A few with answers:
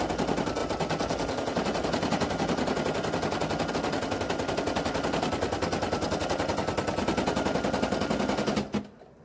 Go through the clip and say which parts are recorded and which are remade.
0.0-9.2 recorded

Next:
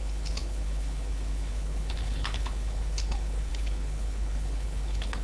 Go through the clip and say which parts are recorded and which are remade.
0.0-5.2 remade